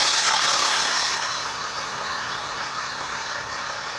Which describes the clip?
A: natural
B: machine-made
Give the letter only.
B